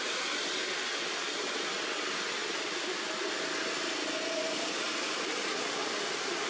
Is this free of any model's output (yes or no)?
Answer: yes